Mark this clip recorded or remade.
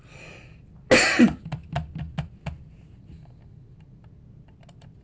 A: recorded